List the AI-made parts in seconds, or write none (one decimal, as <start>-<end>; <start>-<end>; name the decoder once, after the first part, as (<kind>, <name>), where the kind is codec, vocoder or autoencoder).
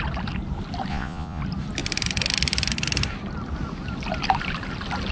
0.9-1.4 (vocoder, Vocos)